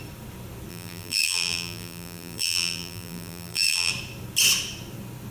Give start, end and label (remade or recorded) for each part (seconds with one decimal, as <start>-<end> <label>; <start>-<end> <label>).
0.0-0.7 recorded; 0.7-3.9 remade; 3.9-5.3 recorded